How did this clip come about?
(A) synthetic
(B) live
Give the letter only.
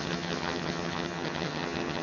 A